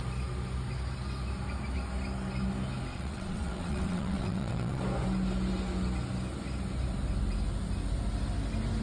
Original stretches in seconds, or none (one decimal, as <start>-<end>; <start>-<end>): 0.0-2.9; 4.8-8.8